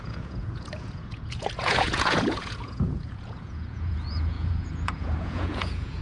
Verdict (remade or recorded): remade